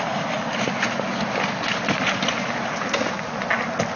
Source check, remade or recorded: recorded